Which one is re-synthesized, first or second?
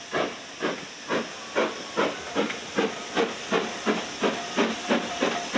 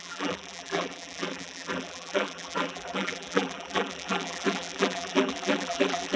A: second